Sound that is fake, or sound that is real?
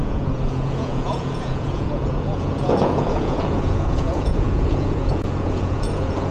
fake